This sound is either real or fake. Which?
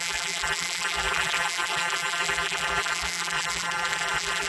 fake